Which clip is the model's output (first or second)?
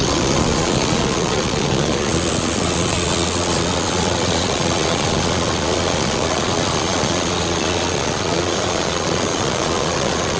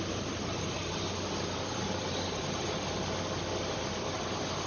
first